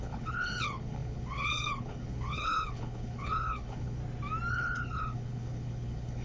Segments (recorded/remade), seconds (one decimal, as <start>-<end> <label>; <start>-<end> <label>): 0.0-4.0 remade; 4.0-4.5 recorded; 4.5-6.2 remade